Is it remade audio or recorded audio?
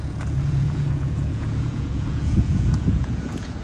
remade